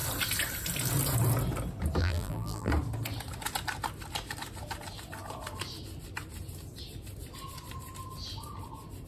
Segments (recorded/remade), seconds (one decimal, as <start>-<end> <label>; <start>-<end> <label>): 0.0-2.0 recorded; 2.0-2.7 remade; 2.7-9.1 recorded